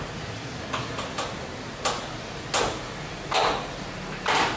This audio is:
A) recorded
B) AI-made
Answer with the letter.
A